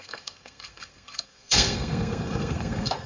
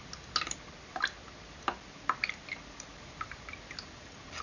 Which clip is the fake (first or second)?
first